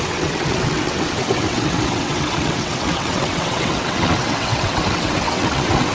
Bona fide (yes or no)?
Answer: no